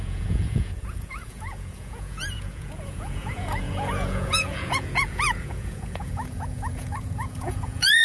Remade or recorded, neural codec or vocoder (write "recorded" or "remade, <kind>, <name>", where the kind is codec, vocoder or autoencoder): remade, vocoder, Vocos